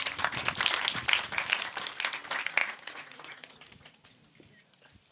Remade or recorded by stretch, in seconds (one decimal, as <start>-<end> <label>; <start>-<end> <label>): 0.0-2.6 recorded; 2.6-4.1 remade; 4.1-5.1 recorded